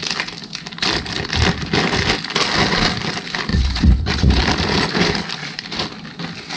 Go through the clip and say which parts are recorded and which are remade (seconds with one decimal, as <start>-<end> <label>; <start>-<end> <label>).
0.0-3.5 recorded; 3.5-4.4 remade; 4.4-6.6 recorded